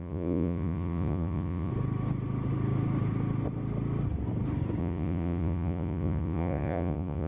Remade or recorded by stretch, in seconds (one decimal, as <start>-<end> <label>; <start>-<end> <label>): 0.0-1.7 remade; 1.7-4.8 recorded; 4.8-7.3 remade